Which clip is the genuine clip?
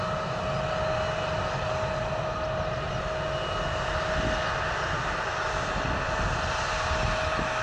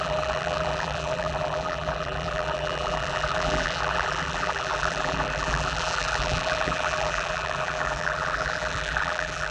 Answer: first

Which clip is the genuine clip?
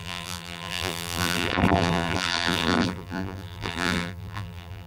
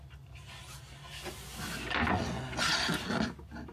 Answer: second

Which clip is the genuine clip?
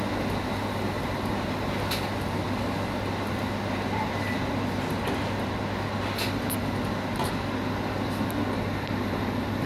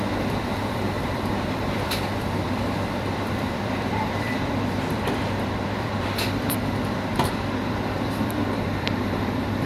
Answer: first